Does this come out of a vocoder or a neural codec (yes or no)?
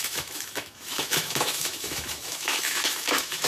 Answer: yes